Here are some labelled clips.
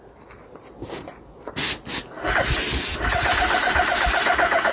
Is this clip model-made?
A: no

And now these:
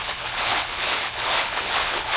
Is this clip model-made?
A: yes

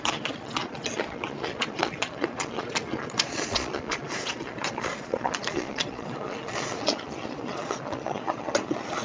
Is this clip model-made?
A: yes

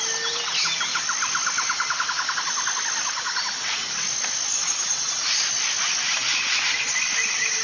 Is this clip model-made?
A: no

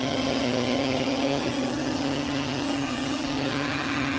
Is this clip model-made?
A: yes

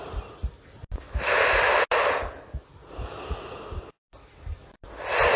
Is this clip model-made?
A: no